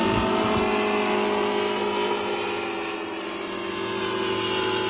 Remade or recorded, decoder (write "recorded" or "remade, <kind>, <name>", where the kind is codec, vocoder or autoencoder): recorded